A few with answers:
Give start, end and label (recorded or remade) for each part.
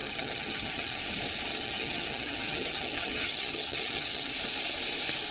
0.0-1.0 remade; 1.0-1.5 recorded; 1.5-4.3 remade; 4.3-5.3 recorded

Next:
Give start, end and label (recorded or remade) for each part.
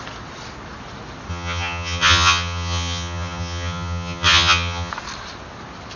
0.0-1.3 recorded; 1.3-4.9 remade; 4.9-6.0 recorded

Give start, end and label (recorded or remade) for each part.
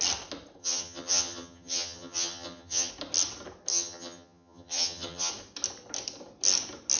0.0-0.6 recorded; 0.6-2.9 remade; 2.9-3.7 recorded; 3.7-5.3 remade; 5.3-7.0 recorded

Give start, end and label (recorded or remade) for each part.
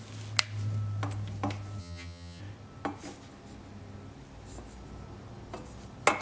0.0-1.8 recorded; 1.8-2.4 remade; 2.4-6.2 recorded